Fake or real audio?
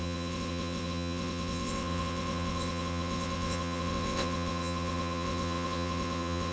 fake